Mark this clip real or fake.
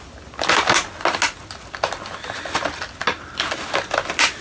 real